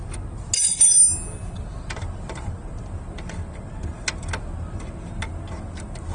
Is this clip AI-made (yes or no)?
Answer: no